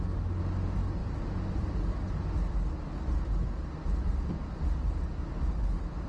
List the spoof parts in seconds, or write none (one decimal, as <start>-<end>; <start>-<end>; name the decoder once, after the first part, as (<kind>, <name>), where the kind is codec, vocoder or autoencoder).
none